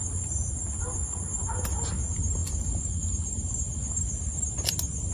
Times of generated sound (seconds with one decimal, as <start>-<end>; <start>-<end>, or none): none